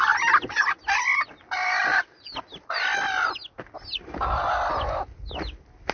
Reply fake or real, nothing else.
real